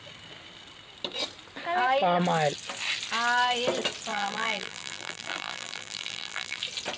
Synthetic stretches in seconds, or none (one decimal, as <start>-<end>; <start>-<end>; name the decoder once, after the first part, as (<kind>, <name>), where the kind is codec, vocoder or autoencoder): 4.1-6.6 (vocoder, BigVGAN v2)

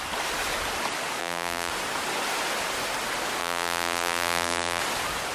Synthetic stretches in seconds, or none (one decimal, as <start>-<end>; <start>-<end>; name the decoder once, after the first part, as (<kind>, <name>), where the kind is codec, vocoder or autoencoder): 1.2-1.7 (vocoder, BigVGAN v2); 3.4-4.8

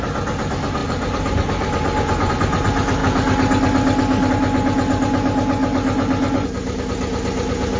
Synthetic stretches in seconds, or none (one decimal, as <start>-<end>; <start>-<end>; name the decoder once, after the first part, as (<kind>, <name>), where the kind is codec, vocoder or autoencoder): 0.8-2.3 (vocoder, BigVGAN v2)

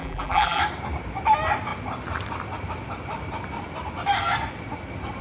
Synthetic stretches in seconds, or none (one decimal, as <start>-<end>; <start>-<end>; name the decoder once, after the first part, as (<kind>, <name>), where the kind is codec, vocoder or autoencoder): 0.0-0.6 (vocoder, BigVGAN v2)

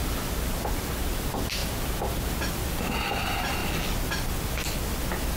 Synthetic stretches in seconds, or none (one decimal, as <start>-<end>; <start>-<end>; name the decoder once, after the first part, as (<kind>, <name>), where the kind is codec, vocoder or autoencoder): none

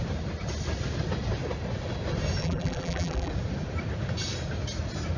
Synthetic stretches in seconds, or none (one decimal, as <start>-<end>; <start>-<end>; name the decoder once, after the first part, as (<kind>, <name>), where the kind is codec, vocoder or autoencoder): 2.4-3.3 (vocoder, BigVGAN v2)

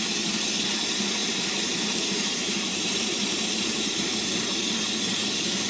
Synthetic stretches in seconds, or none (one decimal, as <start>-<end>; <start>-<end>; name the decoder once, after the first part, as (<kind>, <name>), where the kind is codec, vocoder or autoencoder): 1.2-4.6 (vocoder, BigVGAN v2); 5.1-5.7